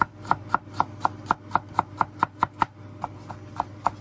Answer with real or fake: real